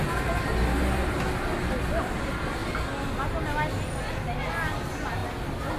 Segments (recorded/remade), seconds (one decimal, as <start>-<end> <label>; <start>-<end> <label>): 0.0-5.8 recorded